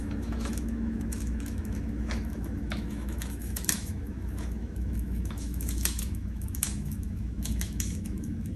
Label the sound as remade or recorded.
remade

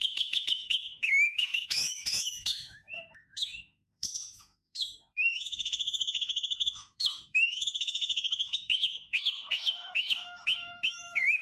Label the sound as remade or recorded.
remade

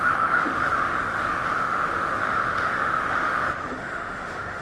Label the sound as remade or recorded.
remade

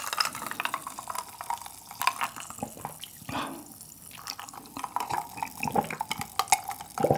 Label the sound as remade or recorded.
recorded